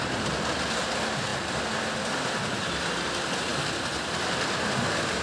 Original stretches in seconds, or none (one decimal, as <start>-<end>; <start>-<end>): 0.0-5.2